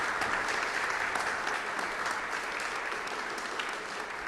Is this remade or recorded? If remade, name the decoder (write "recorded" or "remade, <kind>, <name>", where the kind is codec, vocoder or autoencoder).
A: recorded